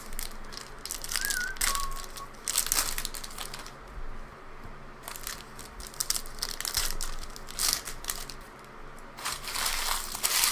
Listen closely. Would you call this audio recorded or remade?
recorded